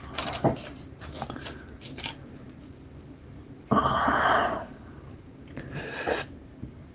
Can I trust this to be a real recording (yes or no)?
no